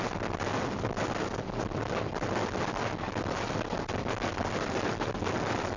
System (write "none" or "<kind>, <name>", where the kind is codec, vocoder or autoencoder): none